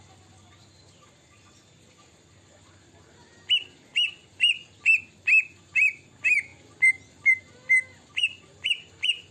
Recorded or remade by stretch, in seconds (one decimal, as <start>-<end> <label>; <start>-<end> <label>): 0.0-3.9 recorded; 3.9-4.9 remade; 4.9-9.3 recorded